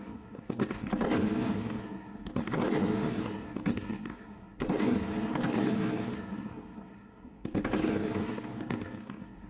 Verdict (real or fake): fake